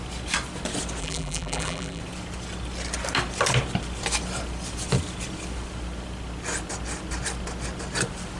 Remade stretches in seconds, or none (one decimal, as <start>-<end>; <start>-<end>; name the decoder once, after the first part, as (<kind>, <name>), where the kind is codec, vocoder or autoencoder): 1.0-2.0 (vocoder, BigVGAN v2)